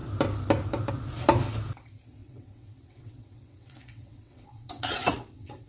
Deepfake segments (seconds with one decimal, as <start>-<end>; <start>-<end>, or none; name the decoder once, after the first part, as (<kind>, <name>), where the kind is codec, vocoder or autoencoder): 2.2-5.7 (vocoder, WaveNeXt)